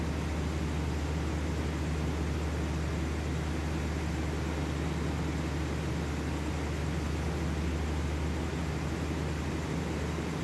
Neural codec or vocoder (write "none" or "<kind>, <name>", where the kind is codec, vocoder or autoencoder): none